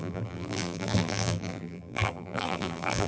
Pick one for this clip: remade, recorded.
remade